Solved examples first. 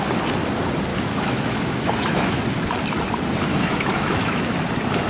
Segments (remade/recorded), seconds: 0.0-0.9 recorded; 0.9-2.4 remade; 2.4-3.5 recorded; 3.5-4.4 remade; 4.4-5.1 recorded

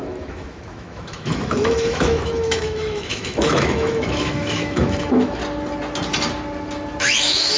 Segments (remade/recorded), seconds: 0.0-5.4 remade; 5.4-7.0 recorded; 7.0-7.6 remade

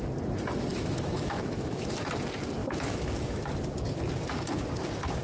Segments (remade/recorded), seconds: 0.0-0.7 recorded; 0.7-1.9 remade; 1.9-2.6 recorded; 2.6-3.4 remade; 3.4-5.2 recorded

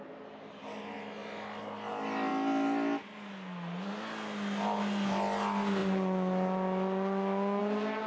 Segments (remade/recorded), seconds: 0.0-8.1 recorded